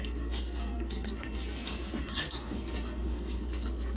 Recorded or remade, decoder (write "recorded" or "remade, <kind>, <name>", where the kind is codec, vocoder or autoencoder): remade, codec, SNAC